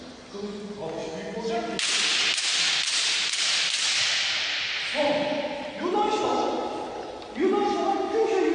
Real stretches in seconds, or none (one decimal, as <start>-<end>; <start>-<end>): 0.0-8.5